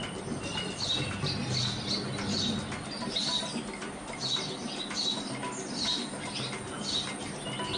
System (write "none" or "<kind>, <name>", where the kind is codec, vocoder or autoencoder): none